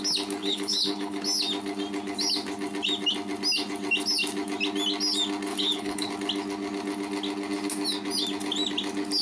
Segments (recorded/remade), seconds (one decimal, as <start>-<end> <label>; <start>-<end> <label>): 0.0-0.4 recorded; 0.4-1.2 remade; 1.2-5.5 recorded; 5.5-6.1 remade; 6.1-9.2 recorded